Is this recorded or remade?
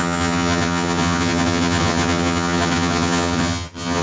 remade